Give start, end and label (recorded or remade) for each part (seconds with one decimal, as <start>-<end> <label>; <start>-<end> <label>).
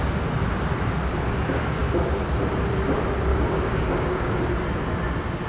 0.0-3.3 recorded; 3.3-4.3 remade; 4.3-5.5 recorded